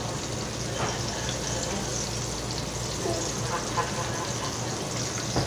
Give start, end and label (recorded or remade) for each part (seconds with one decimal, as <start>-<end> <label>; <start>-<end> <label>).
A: 0.0-5.5 recorded